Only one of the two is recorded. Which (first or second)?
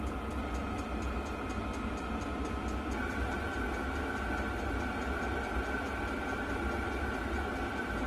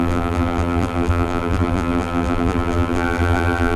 first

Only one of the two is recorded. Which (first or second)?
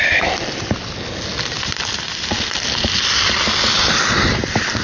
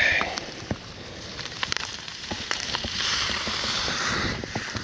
first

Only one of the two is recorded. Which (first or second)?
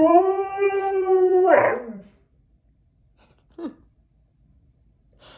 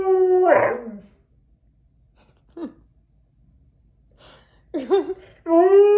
second